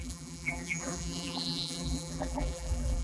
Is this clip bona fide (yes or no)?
no